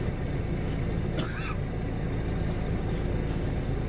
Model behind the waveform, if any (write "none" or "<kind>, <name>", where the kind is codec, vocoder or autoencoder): none